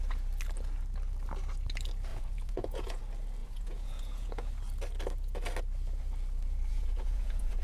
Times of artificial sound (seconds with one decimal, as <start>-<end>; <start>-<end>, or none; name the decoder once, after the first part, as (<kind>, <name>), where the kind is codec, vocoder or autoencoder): 2.1-3.0 (vocoder, Vocos); 3.4-4.5; 6.7-7.6